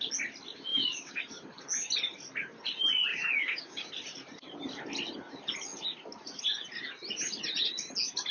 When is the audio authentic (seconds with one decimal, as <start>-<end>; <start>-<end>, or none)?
0.0-0.7; 1.2-3.1; 3.9-8.3